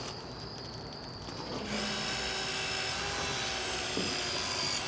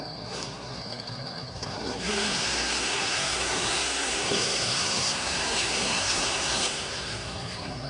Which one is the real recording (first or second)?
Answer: first